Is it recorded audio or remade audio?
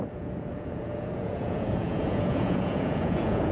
remade